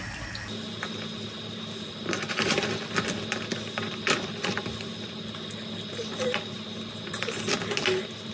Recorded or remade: recorded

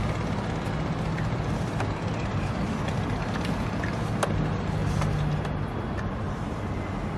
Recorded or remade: recorded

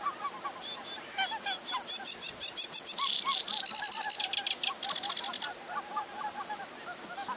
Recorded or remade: recorded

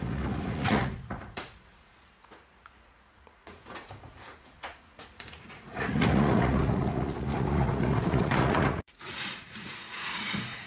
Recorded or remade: remade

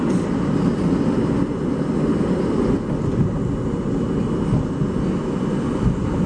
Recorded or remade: recorded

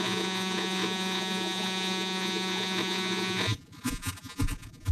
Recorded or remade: remade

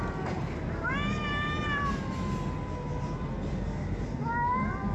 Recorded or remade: recorded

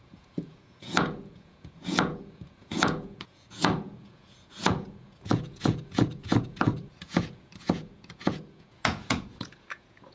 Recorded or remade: remade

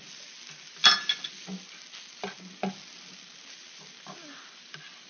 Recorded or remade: recorded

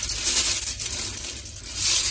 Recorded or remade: recorded